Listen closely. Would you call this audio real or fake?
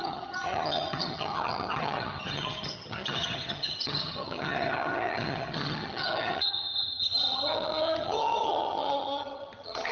fake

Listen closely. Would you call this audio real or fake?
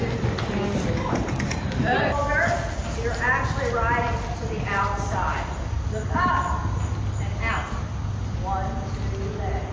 real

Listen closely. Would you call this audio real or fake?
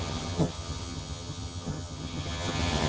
fake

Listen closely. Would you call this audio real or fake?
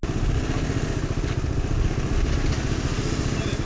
real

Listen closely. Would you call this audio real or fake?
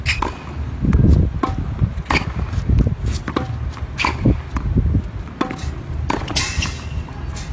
real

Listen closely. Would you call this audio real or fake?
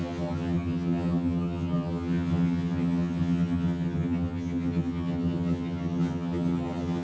fake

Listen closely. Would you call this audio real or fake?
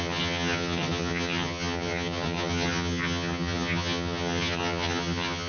fake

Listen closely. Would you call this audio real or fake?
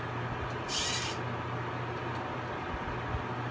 real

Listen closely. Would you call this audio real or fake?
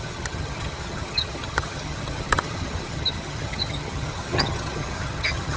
fake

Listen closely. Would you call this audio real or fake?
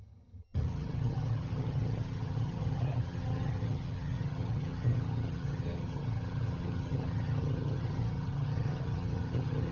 fake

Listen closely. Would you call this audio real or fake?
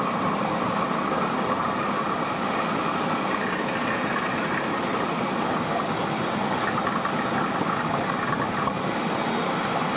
real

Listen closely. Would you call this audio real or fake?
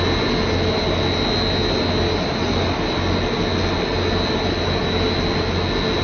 real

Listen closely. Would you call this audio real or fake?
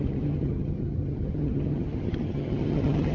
fake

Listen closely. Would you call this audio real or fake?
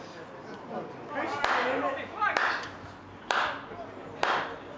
real